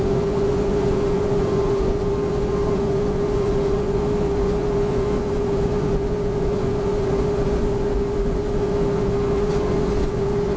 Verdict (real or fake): fake